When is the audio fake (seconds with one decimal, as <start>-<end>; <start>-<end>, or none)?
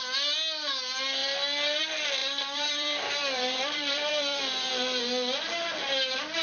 2.2-4.7